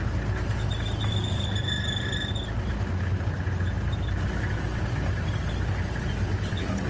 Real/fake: real